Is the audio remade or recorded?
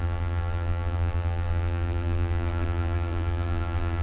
remade